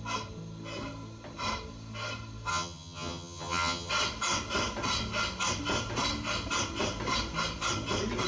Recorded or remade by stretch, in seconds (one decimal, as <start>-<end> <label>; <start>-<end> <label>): 0.0-2.5 recorded; 2.5-3.9 remade; 3.9-8.3 recorded